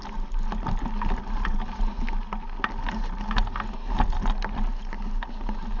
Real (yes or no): yes